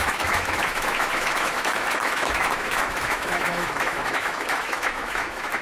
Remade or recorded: remade